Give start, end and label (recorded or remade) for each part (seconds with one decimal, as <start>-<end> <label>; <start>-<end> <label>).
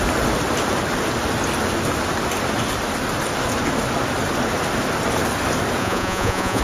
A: 0.0-5.8 recorded; 5.8-6.6 remade